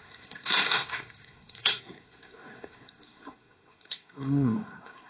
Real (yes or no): no